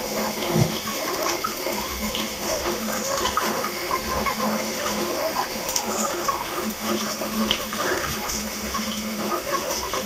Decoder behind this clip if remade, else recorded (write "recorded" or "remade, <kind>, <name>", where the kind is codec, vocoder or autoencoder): remade, autoencoder, DAC-VAE